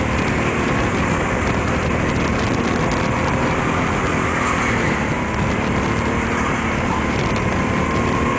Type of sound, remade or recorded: recorded